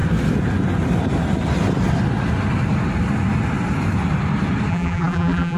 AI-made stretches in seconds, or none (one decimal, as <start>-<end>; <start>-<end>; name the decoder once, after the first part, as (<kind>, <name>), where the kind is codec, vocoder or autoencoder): 4.7-5.6 (vocoder, BigVGAN v2)